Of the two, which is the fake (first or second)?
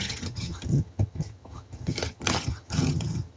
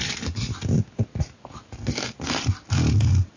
first